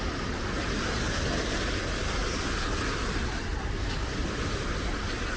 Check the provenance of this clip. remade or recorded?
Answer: recorded